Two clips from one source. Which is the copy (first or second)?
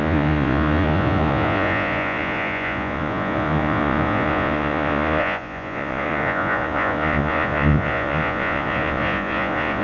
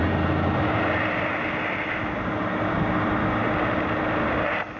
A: first